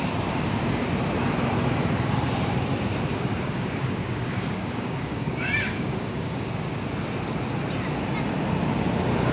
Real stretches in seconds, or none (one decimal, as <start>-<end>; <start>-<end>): 0.0-3.1; 6.8-9.3

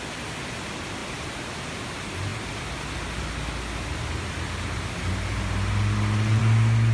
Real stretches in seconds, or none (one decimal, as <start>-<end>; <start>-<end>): 0.0-6.9

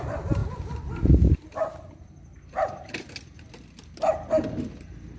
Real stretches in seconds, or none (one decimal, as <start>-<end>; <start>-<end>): 0.0-5.2

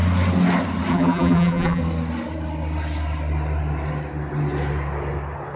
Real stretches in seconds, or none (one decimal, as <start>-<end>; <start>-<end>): 0.0-0.9; 1.8-5.6